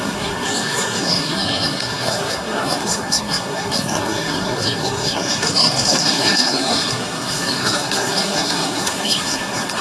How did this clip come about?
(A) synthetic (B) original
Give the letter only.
A